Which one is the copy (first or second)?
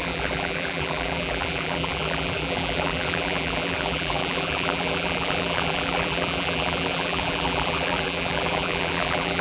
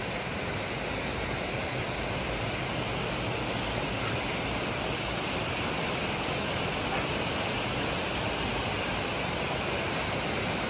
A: first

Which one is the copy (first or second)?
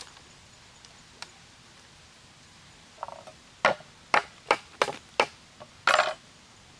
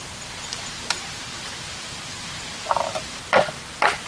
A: second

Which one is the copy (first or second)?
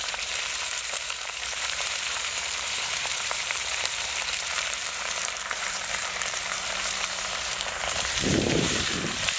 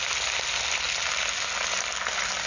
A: first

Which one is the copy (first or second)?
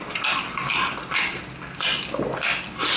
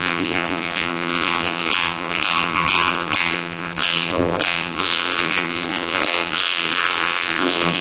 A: second